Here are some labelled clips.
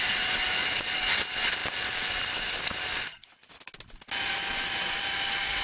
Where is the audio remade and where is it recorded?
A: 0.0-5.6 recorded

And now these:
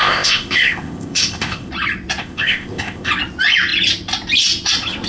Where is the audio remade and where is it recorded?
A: 0.0-1.7 remade; 1.7-2.2 recorded; 2.2-3.1 remade; 3.1-5.1 recorded